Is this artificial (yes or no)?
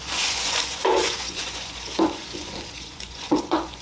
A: yes